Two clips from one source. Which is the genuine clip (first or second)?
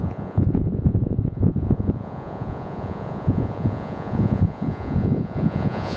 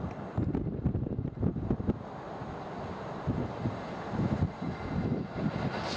second